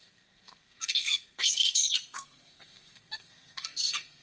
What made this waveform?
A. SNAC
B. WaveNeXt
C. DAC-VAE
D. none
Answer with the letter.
A